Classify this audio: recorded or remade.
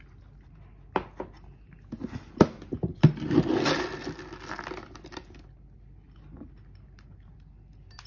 recorded